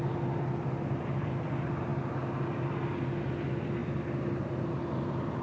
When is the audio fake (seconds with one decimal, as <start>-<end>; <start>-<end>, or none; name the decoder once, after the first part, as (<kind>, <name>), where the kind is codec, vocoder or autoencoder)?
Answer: none